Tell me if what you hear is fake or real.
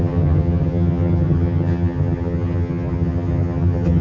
fake